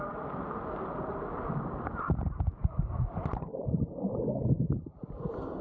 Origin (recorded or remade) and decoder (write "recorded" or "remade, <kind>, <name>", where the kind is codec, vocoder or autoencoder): remade, vocoder, BigVGAN v2